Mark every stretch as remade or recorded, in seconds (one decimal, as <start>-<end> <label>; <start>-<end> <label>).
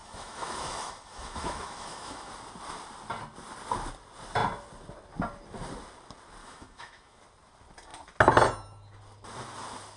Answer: 0.0-2.3 remade; 2.3-6.4 recorded; 6.4-7.2 remade; 7.2-10.0 recorded